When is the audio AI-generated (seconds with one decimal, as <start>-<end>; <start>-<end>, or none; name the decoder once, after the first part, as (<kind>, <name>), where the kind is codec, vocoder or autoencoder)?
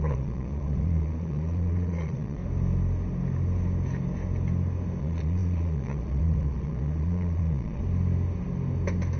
0.0-2.4 (vocoder, Vocos); 5.0-7.8